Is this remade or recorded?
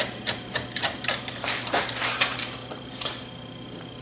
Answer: remade